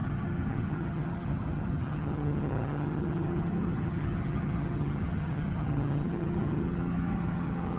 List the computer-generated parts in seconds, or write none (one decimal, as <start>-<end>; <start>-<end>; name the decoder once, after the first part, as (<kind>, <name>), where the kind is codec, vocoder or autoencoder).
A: 0.0-7.8 (vocoder, HiFi-GAN)

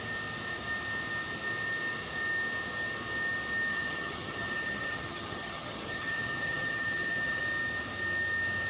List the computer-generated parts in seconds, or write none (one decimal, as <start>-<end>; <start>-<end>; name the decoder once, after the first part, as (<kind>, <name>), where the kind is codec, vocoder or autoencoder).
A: 3.7-7.4 (vocoder, HiFi-GAN)

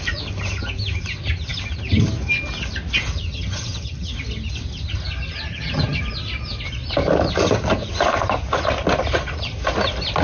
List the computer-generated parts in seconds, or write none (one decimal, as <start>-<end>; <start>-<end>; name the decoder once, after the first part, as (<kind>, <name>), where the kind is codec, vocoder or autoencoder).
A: 3.3-4.1 (vocoder, HiFi-GAN); 5.5-6.0

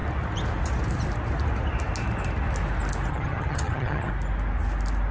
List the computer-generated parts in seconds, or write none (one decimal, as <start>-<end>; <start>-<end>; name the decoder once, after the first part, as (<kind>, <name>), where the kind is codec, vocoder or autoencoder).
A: 3.1-4.1 (vocoder, HiFi-GAN)

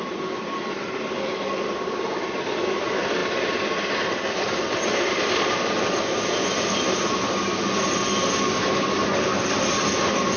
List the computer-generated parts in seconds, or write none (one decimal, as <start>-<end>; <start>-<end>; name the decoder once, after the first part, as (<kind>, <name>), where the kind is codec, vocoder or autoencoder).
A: none

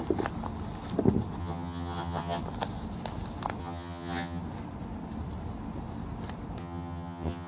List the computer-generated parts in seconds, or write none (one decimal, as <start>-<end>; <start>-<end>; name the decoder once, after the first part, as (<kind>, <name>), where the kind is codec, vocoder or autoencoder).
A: 1.4-2.4 (vocoder, HiFi-GAN); 3.6-4.4; 6.6-7.5